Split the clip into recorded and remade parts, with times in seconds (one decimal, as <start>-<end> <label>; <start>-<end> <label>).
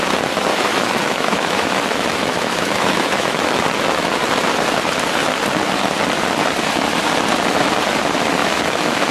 0.0-0.5 recorded; 0.5-3.6 remade; 3.6-8.4 recorded; 8.4-9.1 remade